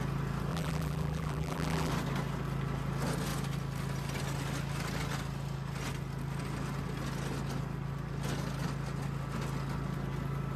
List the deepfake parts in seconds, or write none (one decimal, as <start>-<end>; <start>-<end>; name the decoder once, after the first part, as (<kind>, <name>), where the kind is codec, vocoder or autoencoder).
0.5-1.9 (vocoder, BigVGAN v2)